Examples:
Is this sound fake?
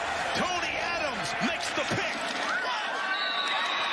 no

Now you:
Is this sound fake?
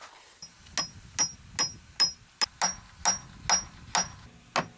no